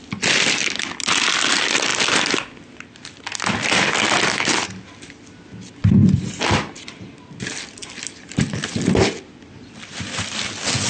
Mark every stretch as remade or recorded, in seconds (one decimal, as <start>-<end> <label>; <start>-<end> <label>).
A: 0.0-10.9 recorded